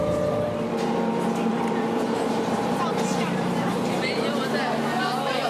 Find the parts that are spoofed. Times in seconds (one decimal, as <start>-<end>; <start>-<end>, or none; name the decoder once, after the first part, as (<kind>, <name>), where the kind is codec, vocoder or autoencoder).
1.5-4.2 (vocoder, BigVGAN v2)